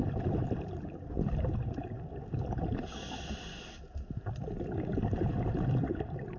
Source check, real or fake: fake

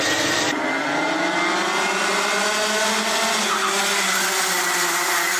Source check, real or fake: real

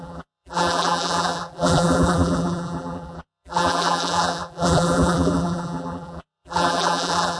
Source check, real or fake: fake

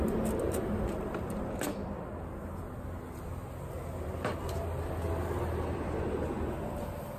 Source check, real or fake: real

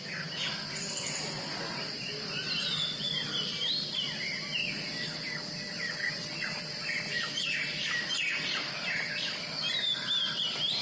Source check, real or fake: real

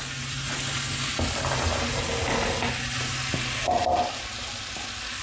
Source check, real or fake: real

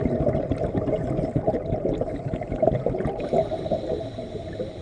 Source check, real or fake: real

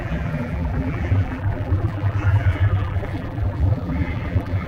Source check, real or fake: fake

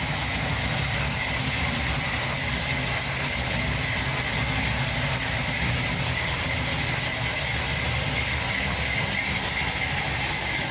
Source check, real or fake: real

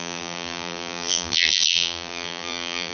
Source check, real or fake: fake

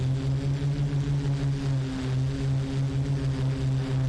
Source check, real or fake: real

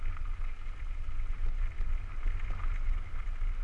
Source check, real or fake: real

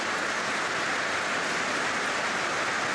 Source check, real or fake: real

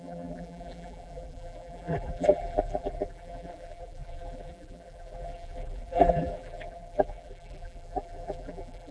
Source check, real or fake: fake